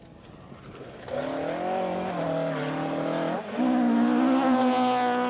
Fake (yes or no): no